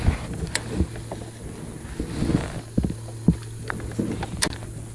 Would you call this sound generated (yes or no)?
no